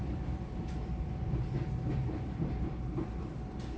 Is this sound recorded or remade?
remade